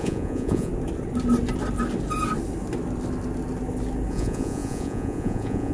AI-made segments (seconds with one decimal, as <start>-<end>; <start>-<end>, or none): 0.0-0.7; 4.1-5.7